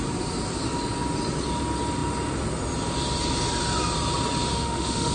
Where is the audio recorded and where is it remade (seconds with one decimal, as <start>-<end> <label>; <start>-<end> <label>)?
0.0-4.5 recorded; 4.5-5.1 remade